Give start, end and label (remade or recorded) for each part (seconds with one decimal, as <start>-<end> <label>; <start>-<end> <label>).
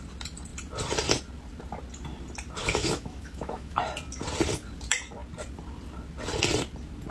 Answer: 0.0-2.6 recorded; 2.6-3.8 remade; 3.8-7.1 recorded